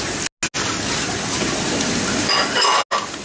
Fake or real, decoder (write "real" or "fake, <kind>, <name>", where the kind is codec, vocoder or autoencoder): real